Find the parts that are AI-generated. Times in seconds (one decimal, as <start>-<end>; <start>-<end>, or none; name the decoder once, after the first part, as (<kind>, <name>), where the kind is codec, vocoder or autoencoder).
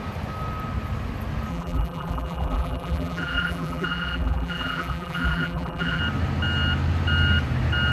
1.5-6.0 (vocoder, BigVGAN v2)